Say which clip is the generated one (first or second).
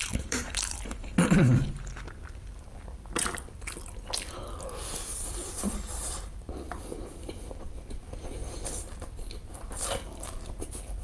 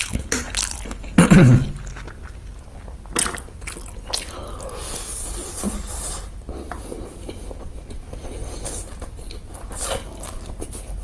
first